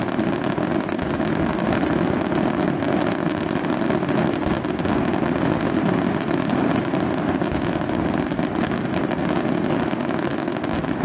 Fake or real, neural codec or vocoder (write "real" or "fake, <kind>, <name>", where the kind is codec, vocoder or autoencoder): real